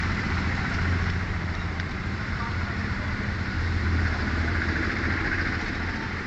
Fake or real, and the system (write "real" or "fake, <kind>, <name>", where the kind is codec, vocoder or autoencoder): fake, vocoder, BigVGAN v2